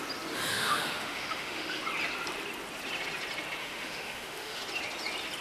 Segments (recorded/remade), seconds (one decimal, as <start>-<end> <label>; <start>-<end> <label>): 0.0-0.5 recorded; 0.5-1.8 remade; 1.8-3.6 recorded; 3.6-4.6 remade; 4.6-5.4 recorded